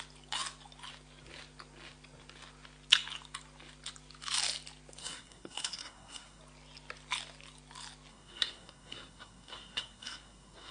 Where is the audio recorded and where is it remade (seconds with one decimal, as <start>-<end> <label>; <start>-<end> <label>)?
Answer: 0.0-5.0 recorded; 5.0-6.4 remade; 6.4-8.1 recorded; 8.1-10.7 remade